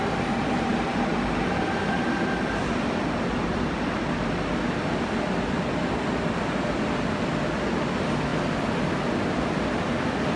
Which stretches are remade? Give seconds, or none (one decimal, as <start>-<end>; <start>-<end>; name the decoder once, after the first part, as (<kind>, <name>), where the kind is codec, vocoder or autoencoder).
none